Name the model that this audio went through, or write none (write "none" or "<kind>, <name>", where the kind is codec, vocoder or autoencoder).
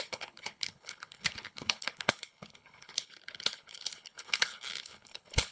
codec, HILCodec